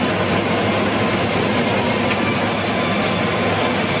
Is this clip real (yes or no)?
yes